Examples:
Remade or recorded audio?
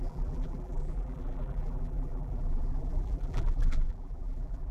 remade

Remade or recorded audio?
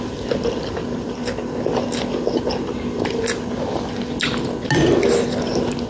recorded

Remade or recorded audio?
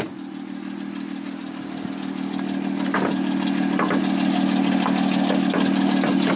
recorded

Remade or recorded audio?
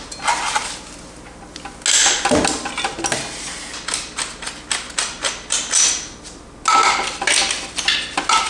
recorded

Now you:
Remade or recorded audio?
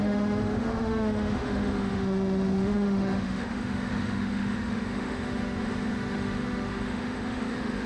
remade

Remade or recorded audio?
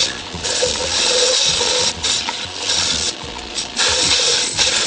remade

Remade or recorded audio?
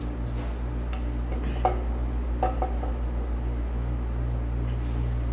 recorded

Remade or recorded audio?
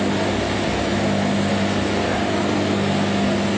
recorded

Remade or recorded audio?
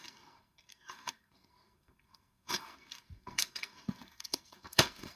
remade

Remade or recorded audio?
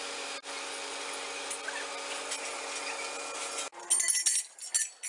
recorded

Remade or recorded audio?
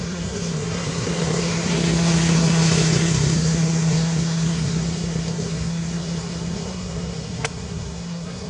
remade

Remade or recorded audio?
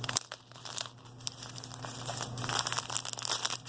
recorded